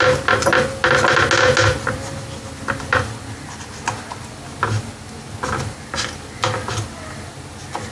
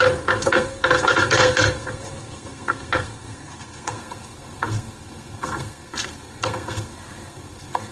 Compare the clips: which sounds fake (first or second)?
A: second